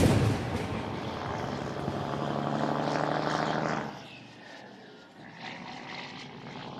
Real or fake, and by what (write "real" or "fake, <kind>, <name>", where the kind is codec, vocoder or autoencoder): real